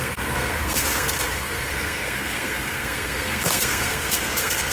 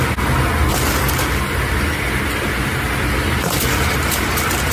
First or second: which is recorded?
second